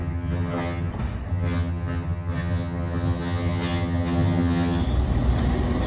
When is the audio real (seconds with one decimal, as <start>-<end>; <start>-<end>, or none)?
0.9-1.3; 4.8-5.9